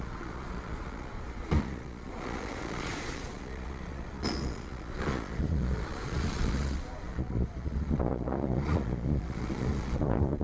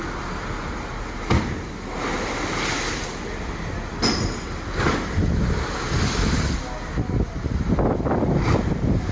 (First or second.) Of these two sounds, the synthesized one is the first